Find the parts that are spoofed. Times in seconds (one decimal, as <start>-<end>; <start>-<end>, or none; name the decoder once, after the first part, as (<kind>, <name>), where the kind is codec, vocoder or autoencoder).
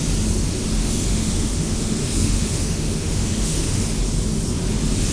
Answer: 0.8-3.9 (autoencoder, DAC-VAE)